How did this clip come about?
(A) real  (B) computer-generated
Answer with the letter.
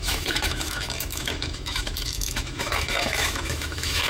B